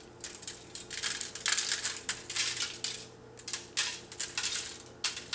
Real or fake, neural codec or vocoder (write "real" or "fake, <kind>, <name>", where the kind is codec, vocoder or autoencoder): real